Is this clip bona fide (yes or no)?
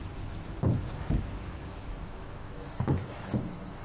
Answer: no